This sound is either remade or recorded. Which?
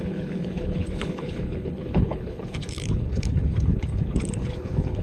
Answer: remade